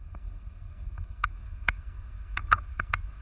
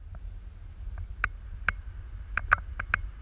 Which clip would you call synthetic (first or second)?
first